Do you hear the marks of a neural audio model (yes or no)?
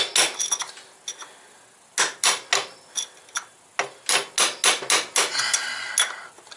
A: no